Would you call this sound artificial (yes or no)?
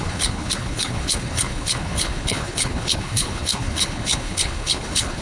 yes